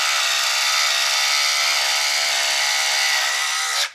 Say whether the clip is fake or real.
real